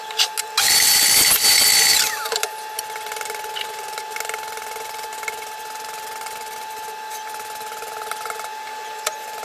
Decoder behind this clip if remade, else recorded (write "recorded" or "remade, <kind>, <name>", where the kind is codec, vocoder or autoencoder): recorded